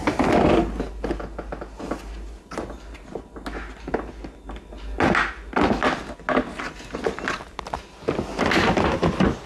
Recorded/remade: recorded